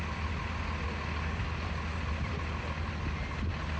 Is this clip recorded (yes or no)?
yes